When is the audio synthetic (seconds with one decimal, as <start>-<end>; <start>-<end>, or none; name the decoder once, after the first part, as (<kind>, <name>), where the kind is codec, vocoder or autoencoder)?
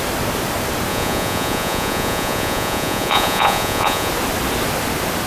0.9-4.1 (vocoder, Vocos)